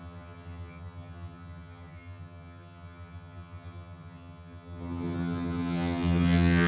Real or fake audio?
fake